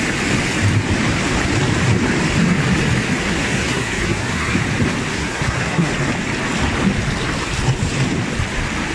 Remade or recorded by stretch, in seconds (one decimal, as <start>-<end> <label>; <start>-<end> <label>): 0.0-3.2 recorded; 3.2-4.6 remade; 4.6-5.1 recorded; 5.1-5.9 remade; 5.9-8.9 recorded